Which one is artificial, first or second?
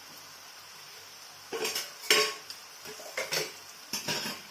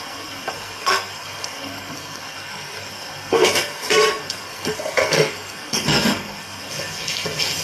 second